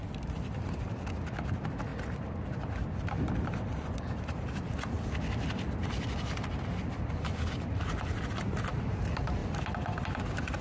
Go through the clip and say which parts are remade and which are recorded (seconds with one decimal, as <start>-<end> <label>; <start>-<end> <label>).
0.0-0.7 remade; 0.7-1.9 recorded; 1.9-7.0 remade; 7.0-9.4 recorded; 9.4-10.2 remade; 10.2-10.6 recorded